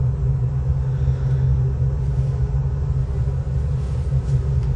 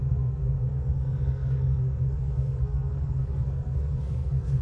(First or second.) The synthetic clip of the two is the second